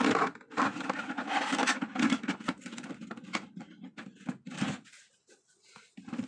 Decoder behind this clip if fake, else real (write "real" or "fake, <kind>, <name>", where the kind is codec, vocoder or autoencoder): real